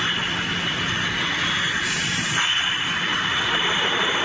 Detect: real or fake real